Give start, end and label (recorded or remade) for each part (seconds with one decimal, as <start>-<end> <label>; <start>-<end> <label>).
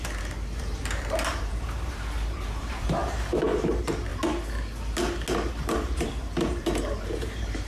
0.0-4.1 remade; 4.1-5.5 recorded; 5.5-7.7 remade